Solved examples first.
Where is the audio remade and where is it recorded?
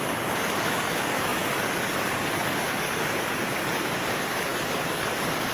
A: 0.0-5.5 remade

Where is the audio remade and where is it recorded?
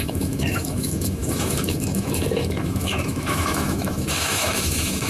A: 0.0-5.1 remade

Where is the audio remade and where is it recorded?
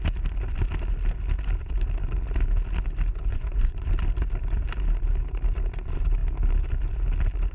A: 0.0-3.3 recorded; 3.3-3.9 remade; 3.9-7.5 recorded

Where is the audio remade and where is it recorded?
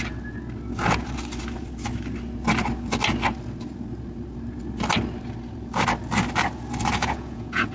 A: 0.0-7.0 recorded; 7.0-7.7 remade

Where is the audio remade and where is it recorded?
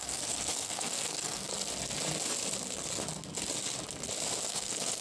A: 0.0-1.5 remade; 1.5-4.5 recorded; 4.5-5.0 remade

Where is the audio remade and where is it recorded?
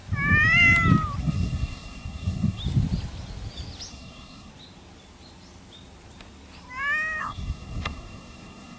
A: 0.0-1.2 recorded; 1.2-2.6 remade; 2.6-3.9 recorded; 3.9-4.5 remade; 4.5-7.2 recorded; 7.2-8.8 remade